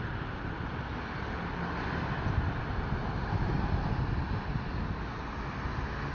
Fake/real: real